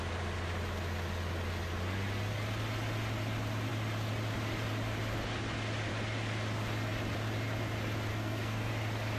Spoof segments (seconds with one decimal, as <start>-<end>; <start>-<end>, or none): 8.1-8.7